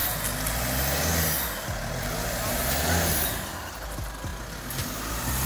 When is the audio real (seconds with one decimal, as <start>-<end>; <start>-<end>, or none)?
0.0-5.5